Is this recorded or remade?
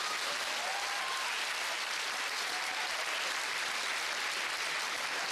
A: recorded